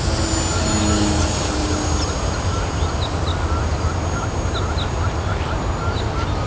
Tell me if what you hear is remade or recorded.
recorded